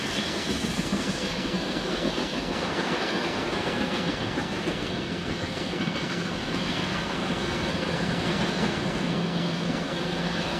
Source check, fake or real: fake